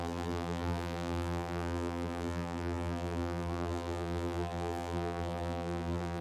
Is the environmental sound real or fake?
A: fake